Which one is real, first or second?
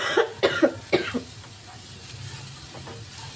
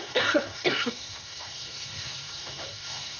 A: first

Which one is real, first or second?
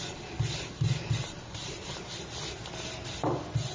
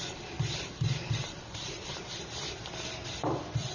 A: first